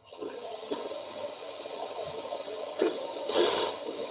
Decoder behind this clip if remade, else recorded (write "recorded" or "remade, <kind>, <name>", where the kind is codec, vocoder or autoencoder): remade, vocoder, HiFi-GAN